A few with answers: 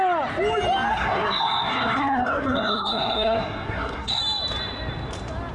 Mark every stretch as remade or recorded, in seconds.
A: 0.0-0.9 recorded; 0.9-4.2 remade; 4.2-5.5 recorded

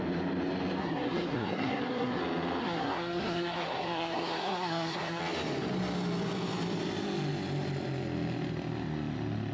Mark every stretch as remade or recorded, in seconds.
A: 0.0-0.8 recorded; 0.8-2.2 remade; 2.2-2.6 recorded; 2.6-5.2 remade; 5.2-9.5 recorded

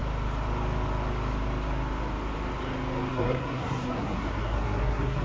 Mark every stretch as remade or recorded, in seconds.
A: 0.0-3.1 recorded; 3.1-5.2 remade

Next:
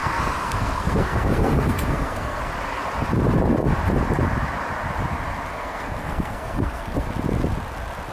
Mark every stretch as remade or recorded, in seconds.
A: 0.0-2.5 remade; 2.5-5.5 recorded; 5.5-7.1 remade; 7.1-8.1 recorded

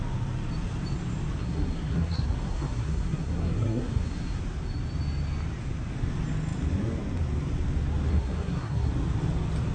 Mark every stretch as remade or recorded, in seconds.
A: 0.0-1.4 recorded; 1.4-4.4 remade; 4.4-8.1 recorded; 8.1-8.9 remade; 8.9-9.7 recorded

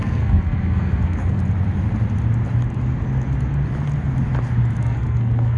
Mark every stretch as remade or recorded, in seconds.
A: 0.0-1.4 remade; 1.4-4.8 recorded; 4.8-5.6 remade

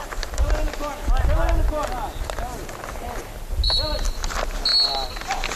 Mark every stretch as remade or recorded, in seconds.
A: 0.0-5.6 recorded

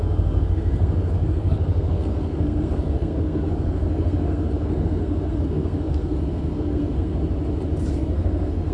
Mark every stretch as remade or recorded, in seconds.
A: 0.0-7.1 remade; 7.1-7.9 recorded; 7.9-8.7 remade